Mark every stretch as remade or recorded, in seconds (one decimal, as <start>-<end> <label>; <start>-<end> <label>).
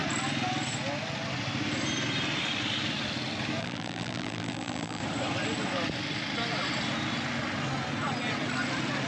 0.0-3.6 recorded; 3.6-5.0 remade; 5.0-9.1 recorded